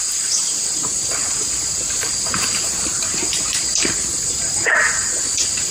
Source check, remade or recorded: remade